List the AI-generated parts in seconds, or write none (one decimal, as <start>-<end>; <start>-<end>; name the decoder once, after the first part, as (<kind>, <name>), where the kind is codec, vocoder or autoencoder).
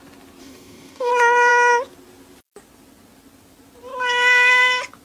0.4-1.1 (codec, DAC)